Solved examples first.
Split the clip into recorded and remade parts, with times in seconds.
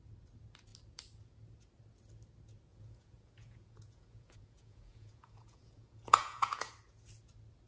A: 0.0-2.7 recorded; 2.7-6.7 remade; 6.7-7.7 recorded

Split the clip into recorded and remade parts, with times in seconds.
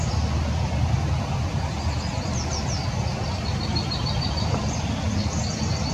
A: 0.0-5.9 recorded